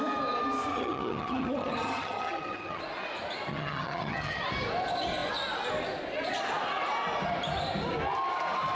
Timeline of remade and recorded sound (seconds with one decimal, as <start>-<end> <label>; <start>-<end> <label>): 0.0-0.7 recorded; 0.7-2.8 remade; 2.8-3.5 recorded; 3.5-4.4 remade; 4.4-8.7 recorded